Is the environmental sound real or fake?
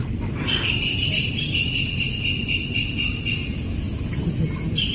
real